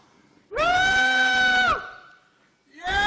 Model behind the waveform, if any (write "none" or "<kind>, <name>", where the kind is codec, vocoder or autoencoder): vocoder, BigVGAN v2